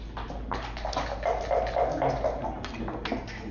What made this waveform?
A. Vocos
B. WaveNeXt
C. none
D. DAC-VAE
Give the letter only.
C